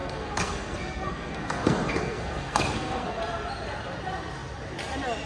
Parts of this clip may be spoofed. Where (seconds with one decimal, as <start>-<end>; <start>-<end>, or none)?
0.0-3.2